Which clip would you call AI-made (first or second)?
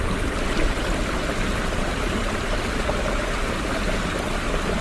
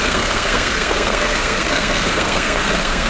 second